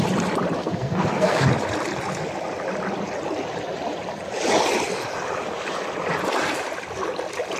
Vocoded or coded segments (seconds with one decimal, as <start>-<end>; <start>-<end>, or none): 0.6-1.5

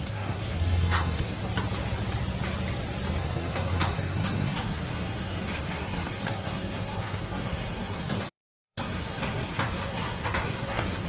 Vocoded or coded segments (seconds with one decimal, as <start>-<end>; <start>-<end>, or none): 0.0-1.4; 3.2-11.1

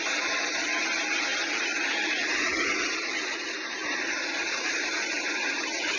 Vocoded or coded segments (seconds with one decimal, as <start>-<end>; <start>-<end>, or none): none